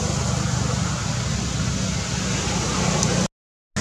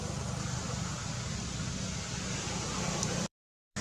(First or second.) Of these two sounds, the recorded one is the first